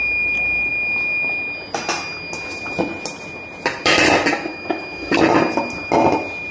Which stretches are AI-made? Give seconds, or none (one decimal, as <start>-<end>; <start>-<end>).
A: 4.5-5.1